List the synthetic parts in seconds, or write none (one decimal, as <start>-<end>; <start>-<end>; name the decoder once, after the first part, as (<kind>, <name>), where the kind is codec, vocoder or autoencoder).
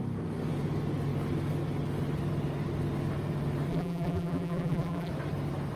3.7-5.1 (vocoder, BigVGAN v2)